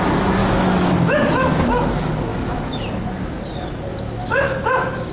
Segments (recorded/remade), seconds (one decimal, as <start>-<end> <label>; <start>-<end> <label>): 0.0-0.4 recorded; 0.4-0.9 remade; 0.9-2.3 recorded; 2.3-2.9 remade; 2.9-3.9 recorded; 3.9-5.1 remade